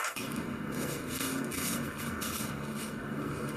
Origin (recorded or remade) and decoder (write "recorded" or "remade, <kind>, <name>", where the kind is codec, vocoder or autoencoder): remade, codec, SNAC